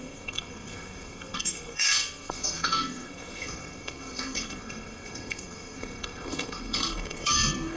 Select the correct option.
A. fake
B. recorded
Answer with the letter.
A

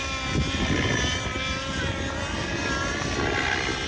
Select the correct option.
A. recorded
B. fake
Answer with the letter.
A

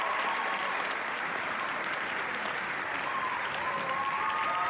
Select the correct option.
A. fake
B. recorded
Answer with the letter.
B